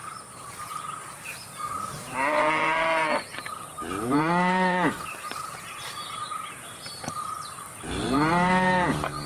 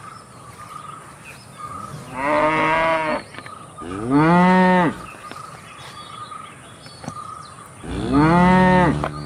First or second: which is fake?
first